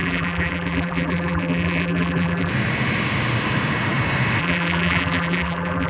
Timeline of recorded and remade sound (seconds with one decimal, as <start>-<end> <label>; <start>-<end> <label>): 0.0-2.5 remade; 2.5-4.4 recorded; 4.4-5.9 remade